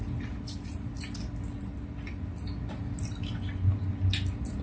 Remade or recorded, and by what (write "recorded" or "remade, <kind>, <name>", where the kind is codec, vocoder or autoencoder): recorded